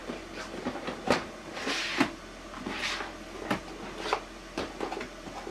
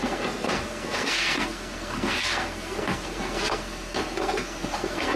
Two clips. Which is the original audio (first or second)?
first